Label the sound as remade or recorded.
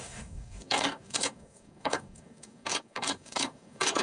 remade